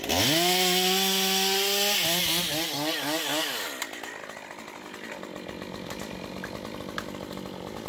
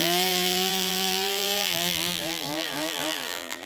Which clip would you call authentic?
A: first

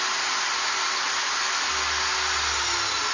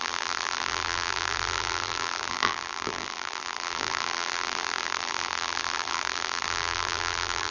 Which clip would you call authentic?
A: first